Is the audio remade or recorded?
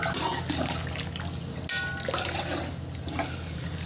recorded